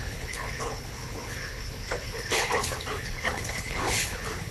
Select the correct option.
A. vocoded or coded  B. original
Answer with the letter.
A